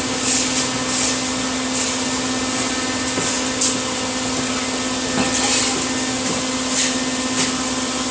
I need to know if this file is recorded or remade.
recorded